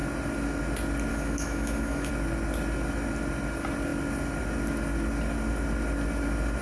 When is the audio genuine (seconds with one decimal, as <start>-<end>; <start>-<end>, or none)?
0.0-1.1; 2.1-6.6